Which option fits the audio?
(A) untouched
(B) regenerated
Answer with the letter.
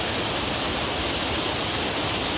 A